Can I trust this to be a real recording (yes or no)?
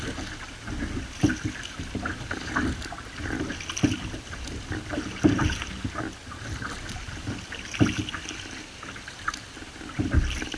yes